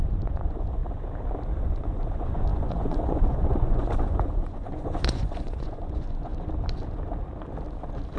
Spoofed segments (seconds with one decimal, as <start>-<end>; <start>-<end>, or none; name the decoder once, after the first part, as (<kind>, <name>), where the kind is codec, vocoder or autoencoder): 0.0-0.8 (vocoder, Vocos); 1.6-6.3